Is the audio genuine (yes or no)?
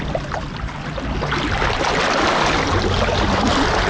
yes